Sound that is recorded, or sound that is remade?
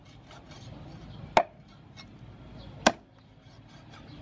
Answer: recorded